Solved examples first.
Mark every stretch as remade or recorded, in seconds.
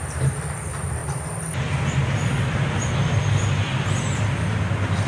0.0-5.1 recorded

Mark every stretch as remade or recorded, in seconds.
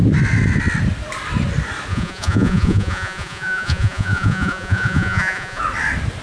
0.0-1.9 recorded; 1.9-5.6 remade; 5.6-6.2 recorded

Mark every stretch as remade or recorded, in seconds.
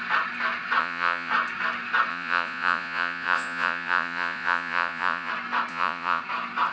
0.0-0.8 recorded; 0.8-1.3 remade; 1.3-2.1 recorded; 2.1-5.3 remade; 5.3-5.7 recorded; 5.7-6.2 remade; 6.2-6.7 recorded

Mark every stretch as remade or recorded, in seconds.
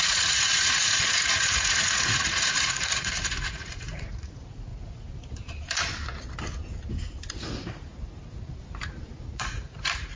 0.0-4.7 remade; 4.7-7.3 recorded; 7.3-7.9 remade; 7.9-9.3 recorded; 9.3-10.2 remade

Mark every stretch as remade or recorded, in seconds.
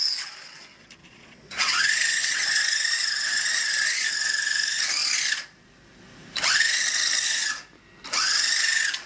0.0-1.0 recorded; 1.0-4.1 remade; 4.1-9.1 recorded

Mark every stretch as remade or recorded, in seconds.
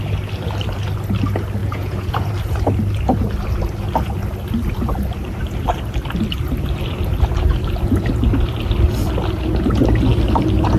0.0-1.6 recorded; 1.6-2.3 remade; 2.3-10.8 recorded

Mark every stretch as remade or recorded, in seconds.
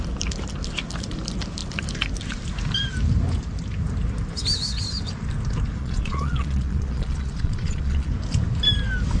0.0-5.8 recorded; 5.8-8.1 remade; 8.1-9.2 recorded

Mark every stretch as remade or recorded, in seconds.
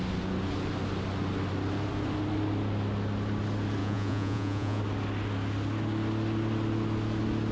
0.0-3.8 recorded; 3.8-4.8 remade; 4.8-7.5 recorded